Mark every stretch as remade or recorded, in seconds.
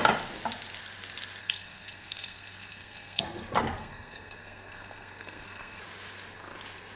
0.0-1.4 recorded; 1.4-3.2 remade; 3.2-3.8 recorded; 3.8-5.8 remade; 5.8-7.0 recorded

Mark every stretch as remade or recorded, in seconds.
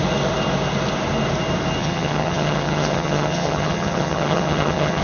0.0-1.8 recorded; 1.8-5.0 remade